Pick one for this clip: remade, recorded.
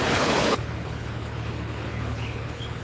remade